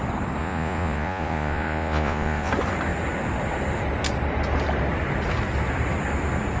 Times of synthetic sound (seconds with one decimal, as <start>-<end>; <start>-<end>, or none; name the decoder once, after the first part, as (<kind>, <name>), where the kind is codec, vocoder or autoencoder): 0.4-2.5 (vocoder, Vocos)